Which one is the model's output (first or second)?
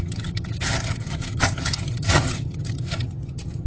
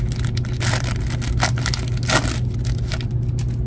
first